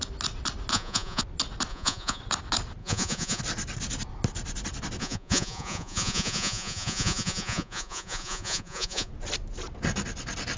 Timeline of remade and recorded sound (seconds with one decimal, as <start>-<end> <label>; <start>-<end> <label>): 0.0-0.7 recorded; 0.7-1.2 remade; 1.2-1.7 recorded; 1.7-2.2 remade; 2.2-2.8 recorded; 2.8-3.4 remade; 3.4-5.0 recorded; 5.0-9.1 remade; 9.1-10.6 recorded